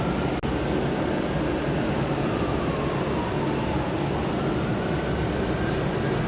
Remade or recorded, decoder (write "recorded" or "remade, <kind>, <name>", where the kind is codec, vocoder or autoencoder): recorded